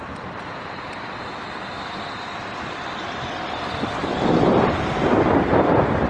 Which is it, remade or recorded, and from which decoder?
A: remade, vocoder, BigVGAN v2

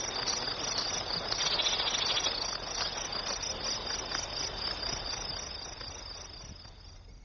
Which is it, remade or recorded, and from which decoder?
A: recorded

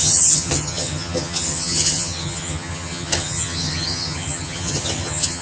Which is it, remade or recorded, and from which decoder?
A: remade, vocoder, HiFi-GAN